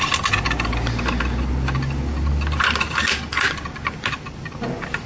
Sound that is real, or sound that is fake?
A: real